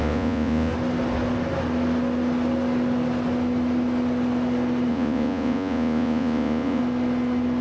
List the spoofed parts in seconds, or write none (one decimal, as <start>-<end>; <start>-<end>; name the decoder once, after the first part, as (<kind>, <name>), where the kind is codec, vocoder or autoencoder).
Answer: 0.0-0.7 (vocoder, Vocos); 4.9-6.8